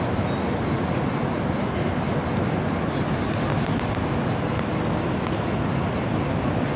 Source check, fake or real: real